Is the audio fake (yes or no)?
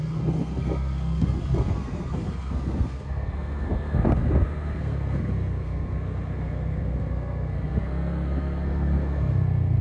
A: yes